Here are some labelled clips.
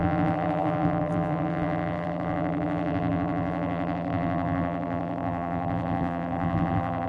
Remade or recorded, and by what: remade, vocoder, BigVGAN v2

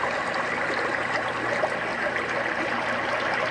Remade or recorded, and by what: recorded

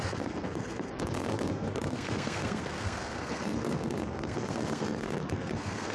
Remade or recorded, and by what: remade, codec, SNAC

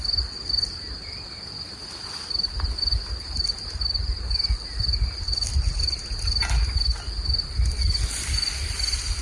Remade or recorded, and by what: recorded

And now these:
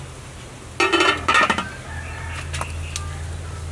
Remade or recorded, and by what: recorded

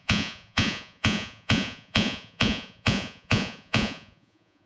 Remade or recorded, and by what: remade, vocoder, Vocos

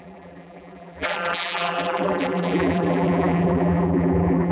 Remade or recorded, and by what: remade, vocoder, BigVGAN v2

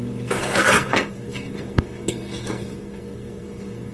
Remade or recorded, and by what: remade, codec, SNAC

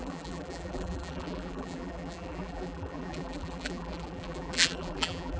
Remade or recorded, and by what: remade, vocoder, BigVGAN v2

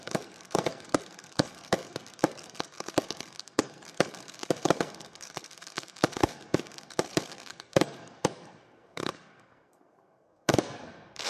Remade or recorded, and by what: remade, codec, SNAC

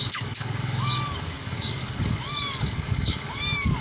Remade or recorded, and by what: remade, codec, DAC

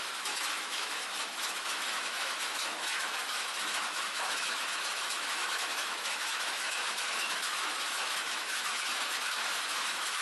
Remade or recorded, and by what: remade, autoencoder, DAC-VAE